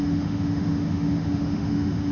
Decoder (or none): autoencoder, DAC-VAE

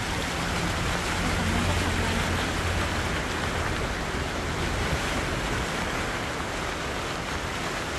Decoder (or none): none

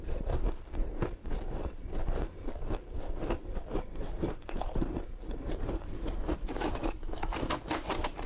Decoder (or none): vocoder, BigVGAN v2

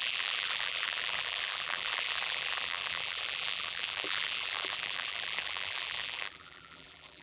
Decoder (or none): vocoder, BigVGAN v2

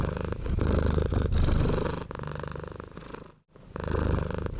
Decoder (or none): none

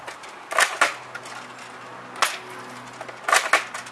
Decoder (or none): none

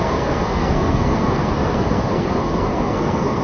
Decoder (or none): codec, SNAC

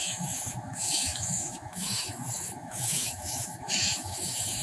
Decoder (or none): autoencoder, DAC-VAE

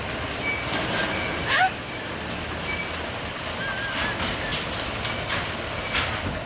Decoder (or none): none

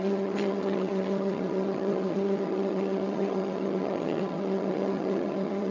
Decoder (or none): vocoder, HiFi-GAN